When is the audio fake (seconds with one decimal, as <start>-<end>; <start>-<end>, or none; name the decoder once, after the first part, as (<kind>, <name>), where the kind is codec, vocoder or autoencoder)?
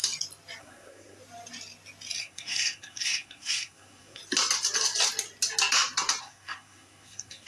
0.6-1.2 (codec, SNAC); 2.2-4.2; 6.2-7.5